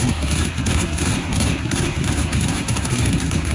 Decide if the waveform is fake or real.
fake